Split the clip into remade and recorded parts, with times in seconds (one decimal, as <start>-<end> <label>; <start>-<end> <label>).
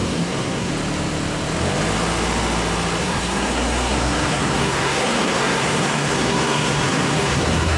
0.0-0.7 remade; 0.7-3.0 recorded; 3.0-7.8 remade